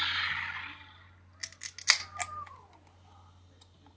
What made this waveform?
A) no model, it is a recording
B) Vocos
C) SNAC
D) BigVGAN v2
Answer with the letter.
A